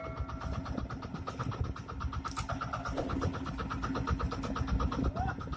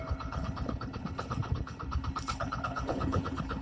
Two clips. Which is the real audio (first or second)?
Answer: first